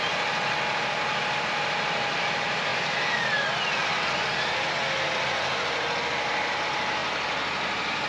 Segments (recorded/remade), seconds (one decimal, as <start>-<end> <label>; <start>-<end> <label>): 0.0-2.7 remade; 2.7-6.6 recorded; 6.6-7.0 remade; 7.0-8.1 recorded